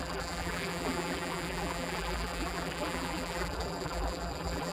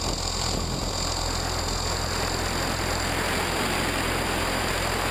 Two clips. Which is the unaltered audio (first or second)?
second